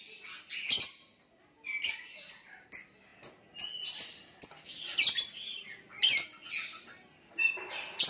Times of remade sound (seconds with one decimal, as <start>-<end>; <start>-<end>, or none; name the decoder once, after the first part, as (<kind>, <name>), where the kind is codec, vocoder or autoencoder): 1.9-2.6 (vocoder, Vocos)